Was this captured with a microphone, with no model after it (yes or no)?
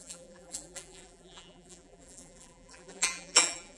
no